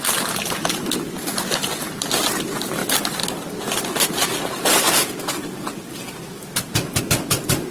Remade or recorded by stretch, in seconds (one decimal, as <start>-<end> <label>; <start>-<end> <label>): 0.0-7.7 recorded